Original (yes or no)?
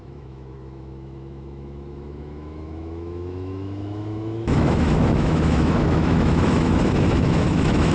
no